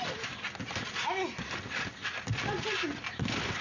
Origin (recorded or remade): recorded